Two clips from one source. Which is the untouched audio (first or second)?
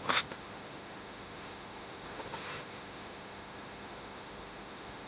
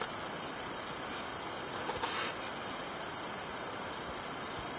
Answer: second